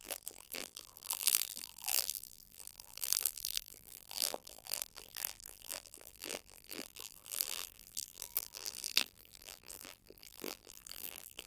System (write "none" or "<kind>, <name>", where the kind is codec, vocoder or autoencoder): vocoder, BigVGAN v2